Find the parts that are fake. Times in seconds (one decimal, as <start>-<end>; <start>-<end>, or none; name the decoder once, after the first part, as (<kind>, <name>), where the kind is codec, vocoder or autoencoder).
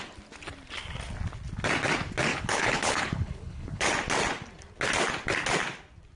2.3-3.9 (codec, HILCodec)